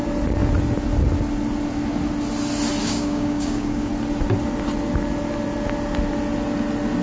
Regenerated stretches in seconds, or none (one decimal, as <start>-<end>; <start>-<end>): 2.8-3.9